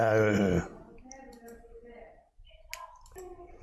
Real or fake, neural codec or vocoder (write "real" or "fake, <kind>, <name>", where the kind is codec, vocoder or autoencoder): real